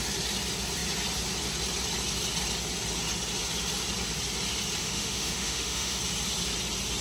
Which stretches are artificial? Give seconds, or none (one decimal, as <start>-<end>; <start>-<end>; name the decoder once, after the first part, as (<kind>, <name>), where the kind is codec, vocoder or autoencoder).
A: 4.8-6.0 (autoencoder, DAC-VAE)